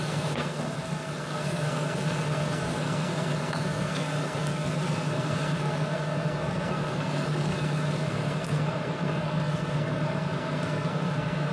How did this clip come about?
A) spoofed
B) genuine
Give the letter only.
A